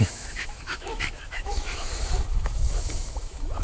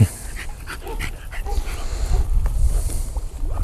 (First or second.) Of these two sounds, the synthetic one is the first